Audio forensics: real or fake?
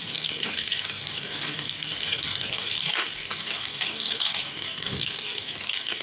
fake